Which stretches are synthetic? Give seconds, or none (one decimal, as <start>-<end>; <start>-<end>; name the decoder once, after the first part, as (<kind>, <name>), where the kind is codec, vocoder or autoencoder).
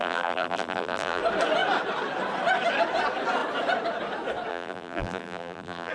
0.0-1.2 (vocoder, BigVGAN v2); 4.5-5.9